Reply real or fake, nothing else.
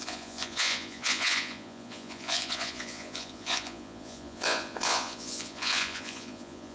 fake